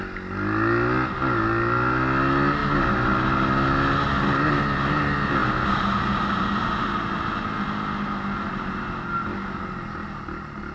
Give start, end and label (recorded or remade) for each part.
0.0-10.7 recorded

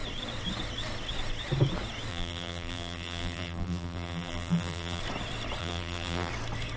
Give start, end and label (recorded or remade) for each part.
0.0-2.1 recorded; 2.1-5.0 remade; 5.0-5.6 recorded; 5.6-6.3 remade; 6.3-6.8 recorded

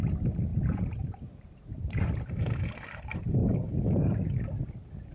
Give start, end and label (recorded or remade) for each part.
0.0-0.5 recorded; 0.5-2.1 remade; 2.1-5.1 recorded

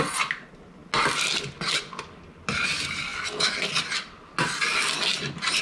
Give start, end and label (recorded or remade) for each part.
0.0-5.6 recorded

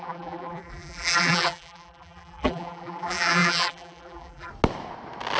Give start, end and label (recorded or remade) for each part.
0.0-4.5 remade; 4.5-5.4 recorded